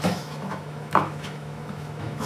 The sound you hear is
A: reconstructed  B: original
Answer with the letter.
A